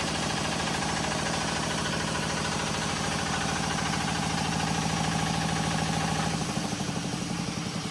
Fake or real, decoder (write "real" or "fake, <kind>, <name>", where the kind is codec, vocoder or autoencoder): fake, vocoder, BigVGAN v2